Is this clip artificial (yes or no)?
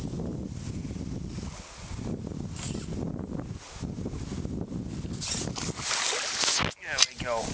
no